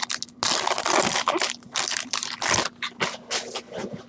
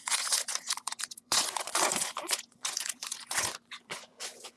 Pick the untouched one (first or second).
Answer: first